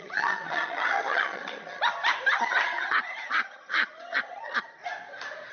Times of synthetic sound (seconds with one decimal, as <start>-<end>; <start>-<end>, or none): 0.0-1.8; 2.4-4.8